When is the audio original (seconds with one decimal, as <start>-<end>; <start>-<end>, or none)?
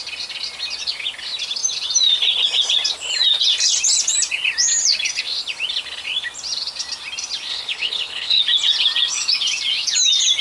0.0-7.5; 8.4-10.4